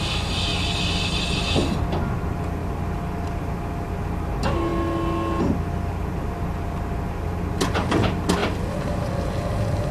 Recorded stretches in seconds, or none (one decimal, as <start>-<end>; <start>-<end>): 0.0-9.9